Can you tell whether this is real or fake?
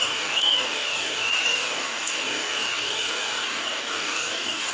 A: fake